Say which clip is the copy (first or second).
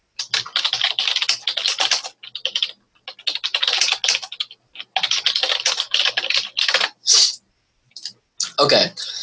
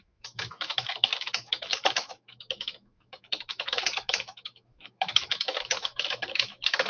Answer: second